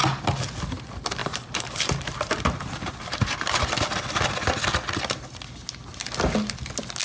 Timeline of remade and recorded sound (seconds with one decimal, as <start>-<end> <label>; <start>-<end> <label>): 0.0-1.2 recorded; 1.2-3.6 remade; 3.6-7.0 recorded